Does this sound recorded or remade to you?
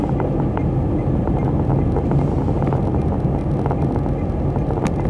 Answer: recorded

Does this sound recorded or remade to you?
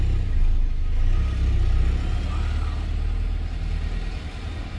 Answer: recorded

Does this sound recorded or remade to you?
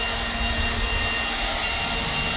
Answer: recorded